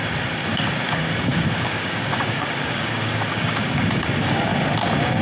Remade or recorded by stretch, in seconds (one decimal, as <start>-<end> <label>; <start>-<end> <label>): 0.0-0.9 recorded; 0.9-4.5 remade; 4.5-5.2 recorded